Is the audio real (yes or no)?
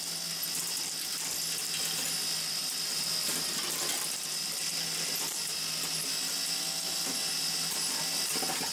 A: yes